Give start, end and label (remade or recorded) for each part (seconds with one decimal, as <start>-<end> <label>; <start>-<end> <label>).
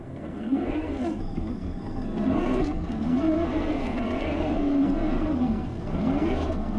0.0-6.8 remade